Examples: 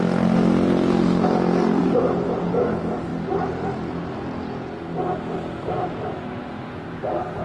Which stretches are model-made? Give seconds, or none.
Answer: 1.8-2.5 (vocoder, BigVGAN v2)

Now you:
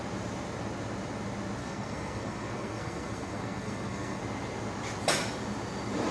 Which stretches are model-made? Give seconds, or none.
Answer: 1.6-4.2 (codec, SNAC)

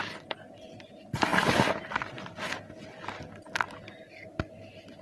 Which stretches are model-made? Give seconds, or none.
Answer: none

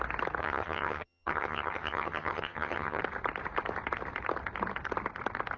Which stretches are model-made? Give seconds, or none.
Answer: 0.4-3.0 (vocoder, HiFi-GAN)

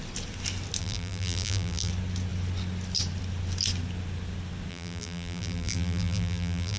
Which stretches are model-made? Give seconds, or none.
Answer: 0.8-1.9 (vocoder, BigVGAN v2); 4.7-6.8

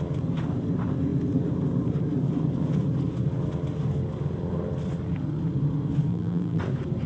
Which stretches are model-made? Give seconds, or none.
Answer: 6.1-6.6 (vocoder, BigVGAN v2)

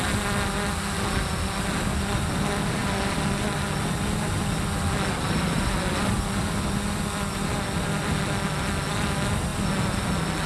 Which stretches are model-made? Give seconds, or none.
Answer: none

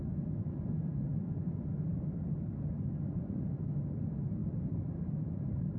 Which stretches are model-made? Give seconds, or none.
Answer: 4.4-5.0 (vocoder, BigVGAN v2)